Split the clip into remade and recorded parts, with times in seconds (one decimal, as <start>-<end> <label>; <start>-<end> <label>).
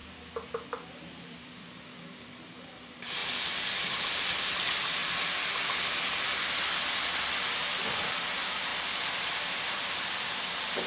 0.0-1.1 recorded; 1.1-3.2 remade; 3.2-4.4 recorded; 4.4-5.0 remade; 5.0-8.0 recorded; 8.0-8.7 remade; 8.7-9.2 recorded; 9.2-10.9 remade